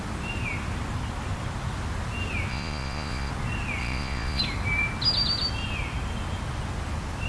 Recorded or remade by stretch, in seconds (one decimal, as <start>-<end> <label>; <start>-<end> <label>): 0.0-2.5 recorded; 2.5-3.3 remade; 3.3-3.8 recorded; 3.8-4.4 remade; 4.4-7.3 recorded